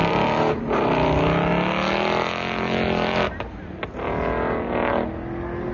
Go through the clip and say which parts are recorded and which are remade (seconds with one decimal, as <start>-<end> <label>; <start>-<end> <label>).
0.0-0.8 remade; 0.8-5.7 recorded